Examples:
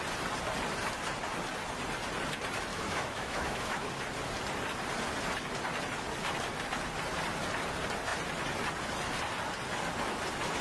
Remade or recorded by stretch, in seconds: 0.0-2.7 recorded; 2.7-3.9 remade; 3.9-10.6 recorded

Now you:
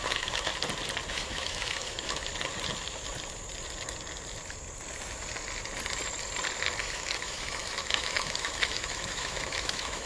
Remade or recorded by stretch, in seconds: 0.0-0.5 remade; 0.5-1.1 recorded; 1.1-2.3 remade; 2.3-6.8 recorded; 6.8-10.1 remade

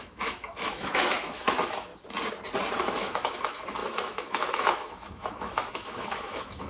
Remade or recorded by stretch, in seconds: 0.0-1.9 remade; 1.9-2.8 recorded; 2.8-6.7 remade